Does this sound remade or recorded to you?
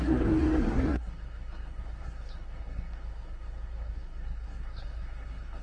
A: remade